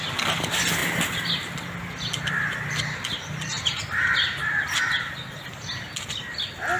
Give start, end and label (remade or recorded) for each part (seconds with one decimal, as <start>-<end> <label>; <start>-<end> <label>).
0.0-6.8 recorded